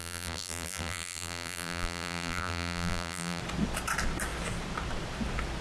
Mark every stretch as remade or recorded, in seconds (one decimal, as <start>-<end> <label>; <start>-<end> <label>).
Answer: 0.0-3.4 remade; 3.4-5.6 recorded